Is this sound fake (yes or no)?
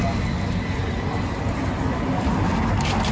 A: no